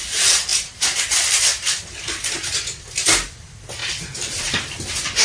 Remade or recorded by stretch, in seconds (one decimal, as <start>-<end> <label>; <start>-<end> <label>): 0.0-5.2 recorded